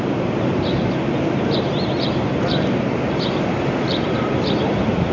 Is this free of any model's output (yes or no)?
no